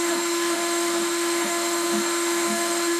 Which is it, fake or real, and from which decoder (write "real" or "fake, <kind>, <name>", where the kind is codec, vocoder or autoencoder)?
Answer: fake, autoencoder, DAC-VAE